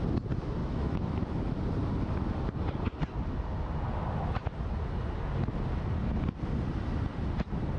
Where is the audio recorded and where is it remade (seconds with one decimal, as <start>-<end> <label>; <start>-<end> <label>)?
0.0-0.6 recorded; 0.6-1.6 remade; 1.6-7.8 recorded